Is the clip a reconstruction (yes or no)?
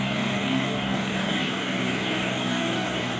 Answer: yes